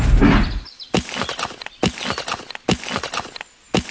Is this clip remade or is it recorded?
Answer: recorded